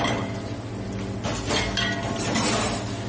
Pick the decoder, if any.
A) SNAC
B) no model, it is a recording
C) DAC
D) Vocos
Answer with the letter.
B